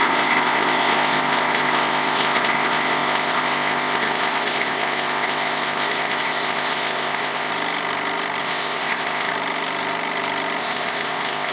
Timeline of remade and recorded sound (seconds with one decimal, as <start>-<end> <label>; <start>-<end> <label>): 0.0-7.5 remade; 7.5-8.4 recorded; 8.4-9.3 remade; 9.3-10.6 recorded; 10.6-11.5 remade